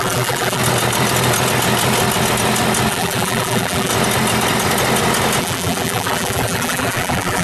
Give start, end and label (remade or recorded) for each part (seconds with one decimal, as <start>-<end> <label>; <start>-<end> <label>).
0.0-0.6 remade; 0.6-2.9 recorded; 2.9-3.9 remade; 3.9-5.4 recorded; 5.4-7.4 remade